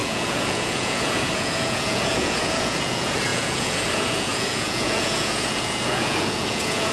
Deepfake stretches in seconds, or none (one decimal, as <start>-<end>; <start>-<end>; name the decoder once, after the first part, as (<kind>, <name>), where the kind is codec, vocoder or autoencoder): 0.0-6.9 (vocoder, Vocos)